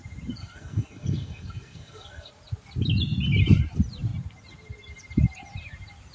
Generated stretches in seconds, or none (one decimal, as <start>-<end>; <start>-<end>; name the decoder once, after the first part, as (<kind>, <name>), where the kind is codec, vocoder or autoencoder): 0.4-2.3 (codec, SNAC)